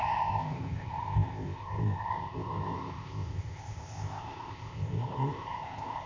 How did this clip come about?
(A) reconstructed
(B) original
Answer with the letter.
A